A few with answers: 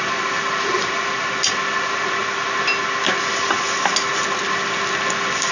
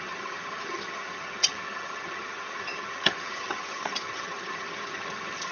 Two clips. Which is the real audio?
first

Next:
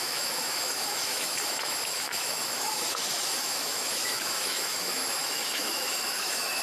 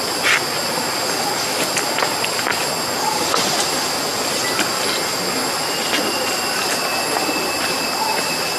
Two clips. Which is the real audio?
second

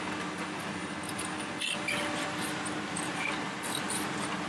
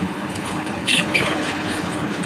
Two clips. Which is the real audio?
first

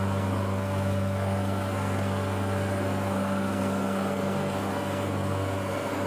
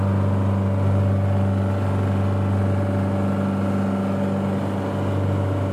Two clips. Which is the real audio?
second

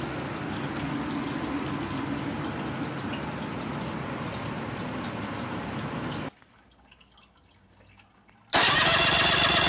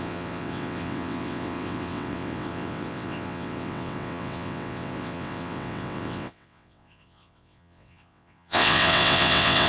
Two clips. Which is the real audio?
first